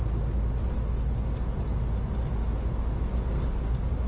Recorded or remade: recorded